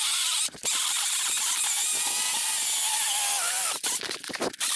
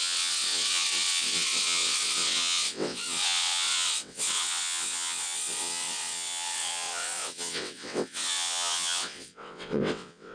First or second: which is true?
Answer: first